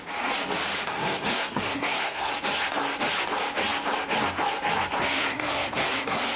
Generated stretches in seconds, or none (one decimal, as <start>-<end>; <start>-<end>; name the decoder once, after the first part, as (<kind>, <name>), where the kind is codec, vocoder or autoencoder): 0.9-2.3 (codec, SNAC); 5.2-6.4